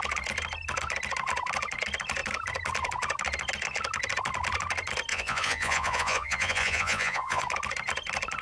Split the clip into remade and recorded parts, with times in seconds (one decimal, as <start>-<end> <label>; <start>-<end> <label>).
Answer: 0.0-5.1 recorded; 5.1-7.4 remade; 7.4-8.4 recorded